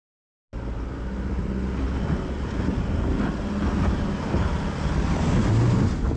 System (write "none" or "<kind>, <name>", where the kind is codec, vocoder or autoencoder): none